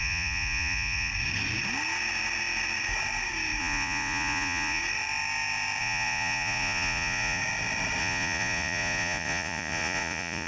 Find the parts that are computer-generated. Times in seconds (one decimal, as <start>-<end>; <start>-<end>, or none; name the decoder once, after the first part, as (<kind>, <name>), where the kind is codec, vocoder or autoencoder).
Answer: 0.0-1.1 (vocoder, Vocos); 3.6-4.8; 5.8-7.4; 8.0-10.5